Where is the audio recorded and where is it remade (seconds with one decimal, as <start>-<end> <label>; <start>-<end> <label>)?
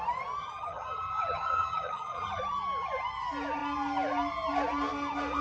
0.0-0.4 recorded; 0.4-2.4 remade; 2.4-5.4 recorded